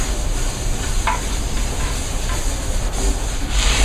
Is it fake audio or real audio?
real